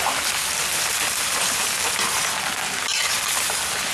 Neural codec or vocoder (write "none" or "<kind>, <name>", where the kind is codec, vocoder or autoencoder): none